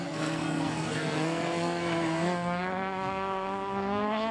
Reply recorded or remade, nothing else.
remade